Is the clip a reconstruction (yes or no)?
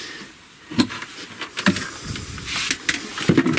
no